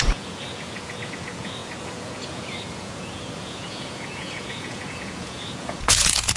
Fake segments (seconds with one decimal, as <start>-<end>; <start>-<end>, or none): 0.0-6.4